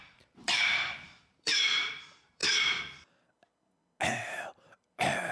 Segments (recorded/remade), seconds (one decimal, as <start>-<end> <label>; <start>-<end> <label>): 0.0-2.4 remade; 2.4-4.2 recorded; 4.2-5.3 remade